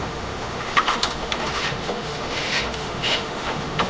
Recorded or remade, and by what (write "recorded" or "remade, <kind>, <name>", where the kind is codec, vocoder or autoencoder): remade, autoencoder, DAC-VAE